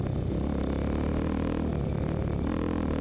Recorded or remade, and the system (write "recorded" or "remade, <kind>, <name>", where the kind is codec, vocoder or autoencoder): recorded